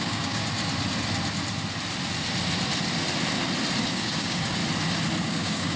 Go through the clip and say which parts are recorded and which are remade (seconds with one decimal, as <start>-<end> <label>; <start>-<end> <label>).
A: 0.0-0.4 remade; 0.4-3.9 recorded; 3.9-4.6 remade; 4.6-5.2 recorded; 5.2-5.8 remade

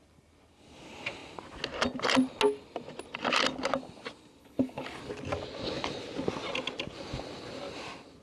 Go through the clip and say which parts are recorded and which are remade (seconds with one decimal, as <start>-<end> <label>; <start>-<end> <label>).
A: 0.0-4.4 recorded; 4.4-5.0 remade; 5.0-8.2 recorded

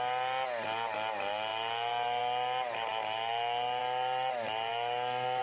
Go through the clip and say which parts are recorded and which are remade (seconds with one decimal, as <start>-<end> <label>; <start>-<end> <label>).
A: 0.0-5.4 recorded

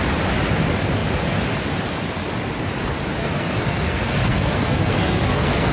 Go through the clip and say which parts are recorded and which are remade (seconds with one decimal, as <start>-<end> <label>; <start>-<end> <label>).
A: 0.0-3.2 recorded; 3.2-5.7 remade

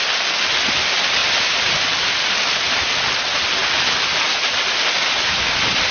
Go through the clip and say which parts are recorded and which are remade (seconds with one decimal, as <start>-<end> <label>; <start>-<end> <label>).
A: 0.0-1.2 recorded; 1.2-3.1 remade; 3.1-5.9 recorded

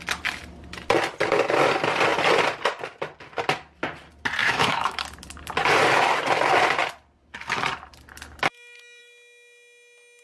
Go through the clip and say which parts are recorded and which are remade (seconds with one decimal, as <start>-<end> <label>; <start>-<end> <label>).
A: 0.0-4.4 recorded; 4.4-5.0 remade; 5.0-10.2 recorded